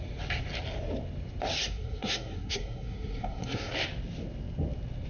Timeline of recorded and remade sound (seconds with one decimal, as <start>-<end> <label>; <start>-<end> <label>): 0.0-1.6 recorded; 1.6-3.7 remade; 3.7-5.1 recorded